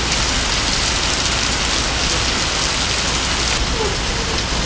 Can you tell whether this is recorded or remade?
recorded